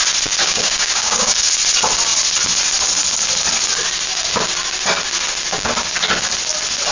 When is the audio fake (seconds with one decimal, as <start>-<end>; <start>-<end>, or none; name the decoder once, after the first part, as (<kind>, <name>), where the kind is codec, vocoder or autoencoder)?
0.4-1.5 (codec, DAC)